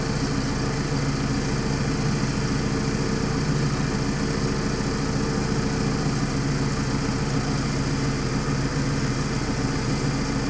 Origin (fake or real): real